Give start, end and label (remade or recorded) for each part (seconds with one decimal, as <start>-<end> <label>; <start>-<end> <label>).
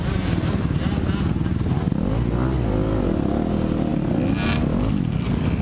0.0-5.6 recorded